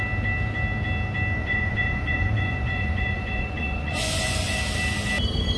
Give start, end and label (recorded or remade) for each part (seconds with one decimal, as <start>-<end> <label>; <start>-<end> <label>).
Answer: 0.0-1.4 recorded; 1.4-4.6 remade; 4.6-5.6 recorded